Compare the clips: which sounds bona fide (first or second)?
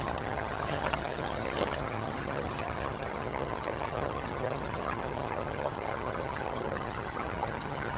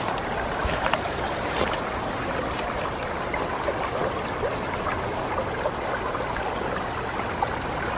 second